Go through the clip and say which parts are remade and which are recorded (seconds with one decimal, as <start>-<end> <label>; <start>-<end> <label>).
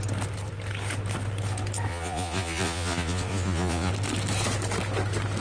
0.0-1.9 recorded; 1.9-3.9 remade; 3.9-5.4 recorded